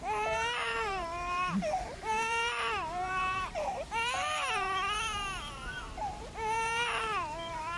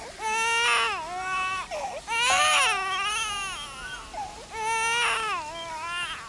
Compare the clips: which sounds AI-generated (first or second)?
first